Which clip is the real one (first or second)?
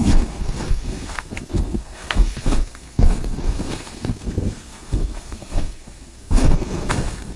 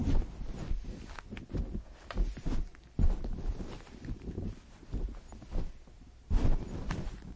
second